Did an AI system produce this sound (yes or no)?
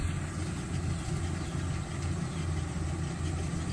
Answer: no